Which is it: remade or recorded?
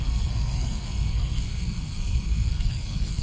remade